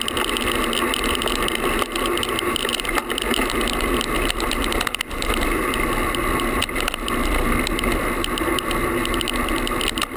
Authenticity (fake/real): real